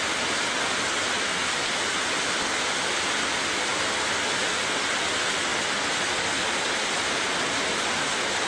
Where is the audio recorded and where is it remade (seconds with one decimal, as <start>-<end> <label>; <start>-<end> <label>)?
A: 0.0-8.5 recorded